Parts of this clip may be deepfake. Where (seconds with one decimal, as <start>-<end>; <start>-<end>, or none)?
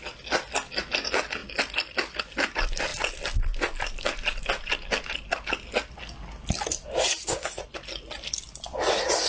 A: none